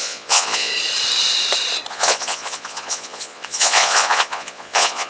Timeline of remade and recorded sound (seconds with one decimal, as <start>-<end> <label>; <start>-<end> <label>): 0.0-0.7 remade; 0.7-1.9 recorded; 1.9-5.1 remade